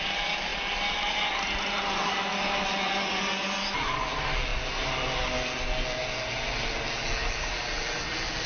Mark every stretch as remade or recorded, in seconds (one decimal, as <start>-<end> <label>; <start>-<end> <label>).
0.0-8.5 recorded